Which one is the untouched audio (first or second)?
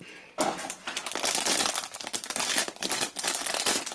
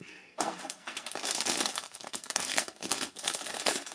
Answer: first